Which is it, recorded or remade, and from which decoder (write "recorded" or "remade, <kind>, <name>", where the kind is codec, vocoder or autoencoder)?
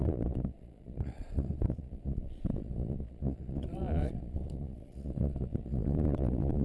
remade, vocoder, Vocos